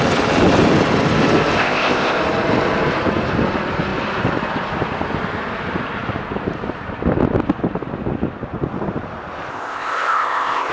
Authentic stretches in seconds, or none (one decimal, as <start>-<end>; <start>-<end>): 0.0-1.6; 2.2-9.5